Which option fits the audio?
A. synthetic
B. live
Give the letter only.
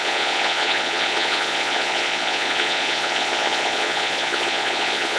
A